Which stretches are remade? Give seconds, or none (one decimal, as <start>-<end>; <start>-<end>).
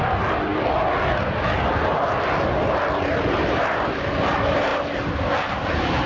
none